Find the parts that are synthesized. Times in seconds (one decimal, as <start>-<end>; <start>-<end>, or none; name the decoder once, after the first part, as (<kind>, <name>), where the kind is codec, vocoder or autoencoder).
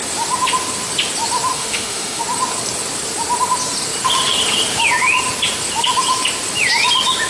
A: 1.5-2.2 (autoencoder, DAC-VAE)